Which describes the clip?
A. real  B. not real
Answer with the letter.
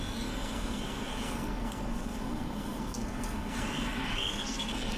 B